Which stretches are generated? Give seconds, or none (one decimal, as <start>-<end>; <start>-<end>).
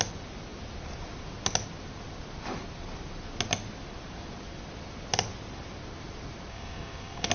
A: 6.5-7.3